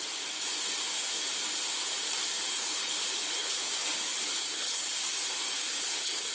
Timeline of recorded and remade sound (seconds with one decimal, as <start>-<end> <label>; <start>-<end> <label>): 0.0-2.5 recorded; 2.5-3.7 remade; 3.7-4.3 recorded; 4.3-4.9 remade; 4.9-5.6 recorded; 5.6-6.3 remade